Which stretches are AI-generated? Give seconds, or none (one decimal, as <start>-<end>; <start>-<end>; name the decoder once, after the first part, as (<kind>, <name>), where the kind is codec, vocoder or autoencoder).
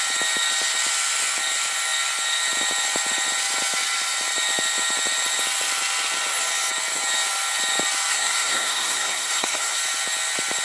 8.1-9.8 (codec, SNAC)